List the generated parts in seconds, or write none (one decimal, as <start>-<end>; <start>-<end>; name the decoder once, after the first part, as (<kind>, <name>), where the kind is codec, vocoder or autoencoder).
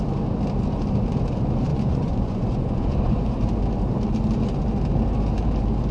1.7-3.4 (vocoder, Vocos)